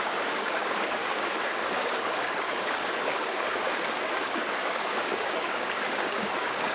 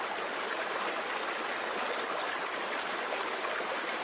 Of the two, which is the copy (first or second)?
first